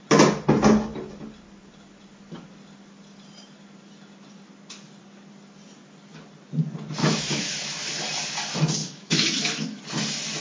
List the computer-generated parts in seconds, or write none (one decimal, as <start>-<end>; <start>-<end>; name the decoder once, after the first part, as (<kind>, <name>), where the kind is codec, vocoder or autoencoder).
7.0-8.0 (autoencoder, DAC-VAE); 8.8-9.8